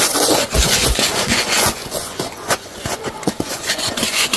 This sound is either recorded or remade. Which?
remade